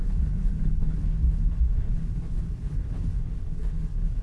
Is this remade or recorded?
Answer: remade